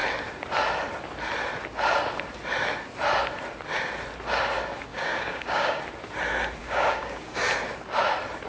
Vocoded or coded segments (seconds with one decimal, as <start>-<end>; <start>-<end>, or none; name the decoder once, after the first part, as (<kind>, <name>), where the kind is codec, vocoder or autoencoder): 4.9-5.8 (codec, DAC); 6.6-7.4